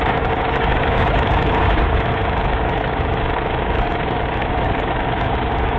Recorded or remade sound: remade